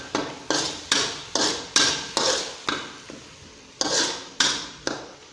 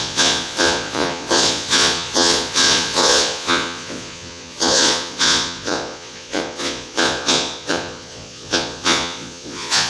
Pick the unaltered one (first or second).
first